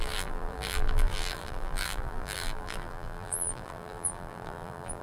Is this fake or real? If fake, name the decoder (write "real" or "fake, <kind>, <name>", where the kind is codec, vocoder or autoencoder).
fake, vocoder, BigVGAN v2